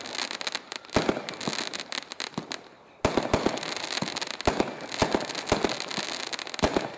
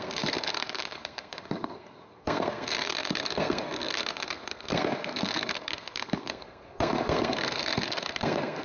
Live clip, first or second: first